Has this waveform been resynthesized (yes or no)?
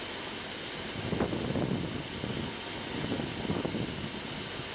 no